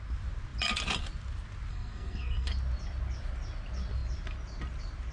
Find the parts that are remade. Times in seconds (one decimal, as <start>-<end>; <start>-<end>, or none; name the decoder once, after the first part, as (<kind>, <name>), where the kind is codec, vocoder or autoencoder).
1.7-2.5 (codec, SNAC)